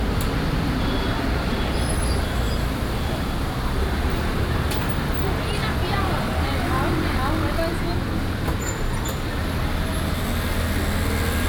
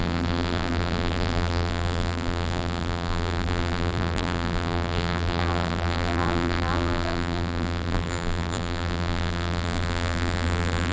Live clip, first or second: first